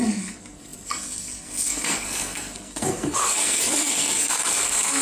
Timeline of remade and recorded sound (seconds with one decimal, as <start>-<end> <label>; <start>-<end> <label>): 0.0-5.0 remade